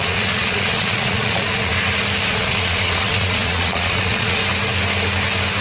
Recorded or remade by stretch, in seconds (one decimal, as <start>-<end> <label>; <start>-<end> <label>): 0.0-1.7 remade; 1.7-2.3 recorded; 2.3-4.4 remade; 4.4-5.6 recorded